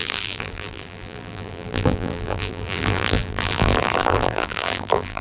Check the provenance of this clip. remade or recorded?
remade